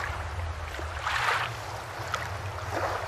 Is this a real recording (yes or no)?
yes